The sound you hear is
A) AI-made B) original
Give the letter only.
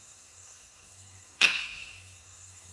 A